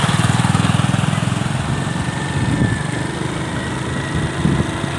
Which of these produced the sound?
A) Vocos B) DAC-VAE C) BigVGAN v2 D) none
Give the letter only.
D